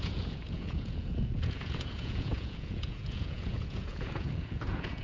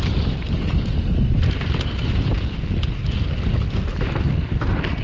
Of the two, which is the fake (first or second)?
first